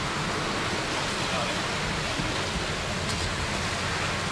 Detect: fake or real real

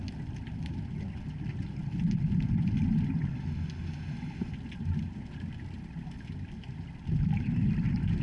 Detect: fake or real real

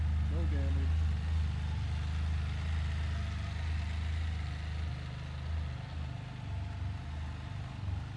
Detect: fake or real real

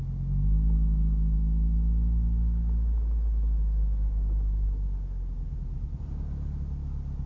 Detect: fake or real real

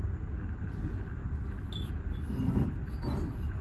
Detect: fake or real real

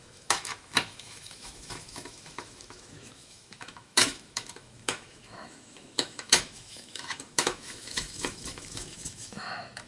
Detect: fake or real fake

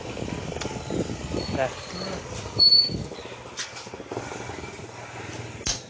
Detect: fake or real real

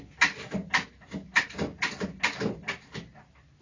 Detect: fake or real real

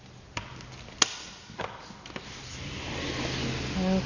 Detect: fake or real real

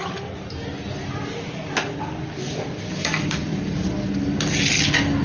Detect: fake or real real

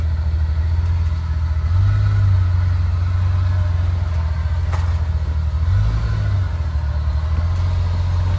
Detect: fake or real real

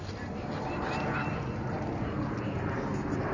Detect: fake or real real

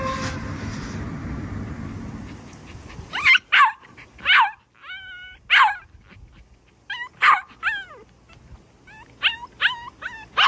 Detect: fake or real real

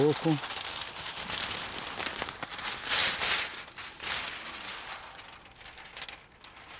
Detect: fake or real real